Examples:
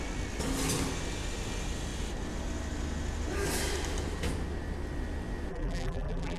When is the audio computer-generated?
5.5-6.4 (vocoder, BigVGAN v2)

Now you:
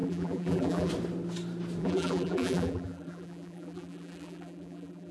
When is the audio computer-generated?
0.0-0.9 (vocoder, BigVGAN v2); 1.8-5.1

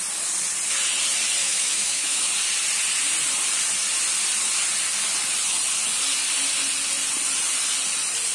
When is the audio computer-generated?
1.4-2.3 (autoencoder, DAC-VAE)